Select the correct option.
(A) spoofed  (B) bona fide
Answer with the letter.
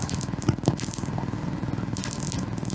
B